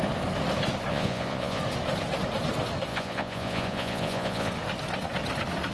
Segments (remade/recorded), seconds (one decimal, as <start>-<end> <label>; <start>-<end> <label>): 0.0-0.9 recorded; 0.9-1.6 remade; 1.6-2.9 recorded; 2.9-4.5 remade; 4.5-5.7 recorded